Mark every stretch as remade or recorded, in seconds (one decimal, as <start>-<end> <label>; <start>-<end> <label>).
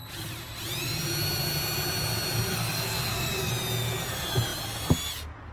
0.0-2.5 recorded; 2.5-3.5 remade; 3.5-5.5 recorded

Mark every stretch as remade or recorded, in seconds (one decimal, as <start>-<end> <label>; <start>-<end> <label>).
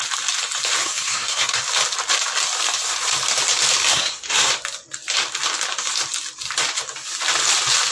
0.0-0.8 recorded; 0.8-1.6 remade; 1.6-3.9 recorded; 3.9-4.5 remade; 4.5-7.9 recorded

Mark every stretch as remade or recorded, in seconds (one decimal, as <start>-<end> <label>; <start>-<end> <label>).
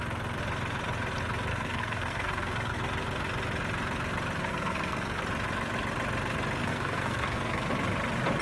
0.0-1.5 recorded; 1.5-2.8 remade; 2.8-4.4 recorded; 4.4-5.2 remade; 5.2-6.6 recorded; 6.6-7.7 remade; 7.7-8.4 recorded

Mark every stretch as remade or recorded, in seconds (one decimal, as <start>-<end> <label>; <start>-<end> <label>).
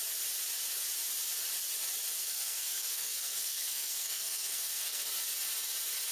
0.0-2.2 recorded; 2.2-5.1 remade; 5.1-6.1 recorded